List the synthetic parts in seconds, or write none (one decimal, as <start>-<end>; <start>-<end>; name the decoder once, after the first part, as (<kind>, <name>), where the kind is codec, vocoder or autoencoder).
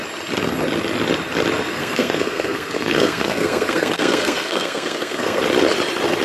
1.7-5.4 (codec, SNAC)